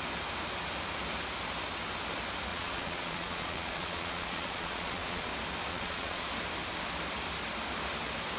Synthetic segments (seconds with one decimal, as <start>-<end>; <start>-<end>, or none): 2.5-5.3; 5.7-6.3